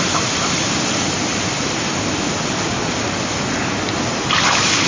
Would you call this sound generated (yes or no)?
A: no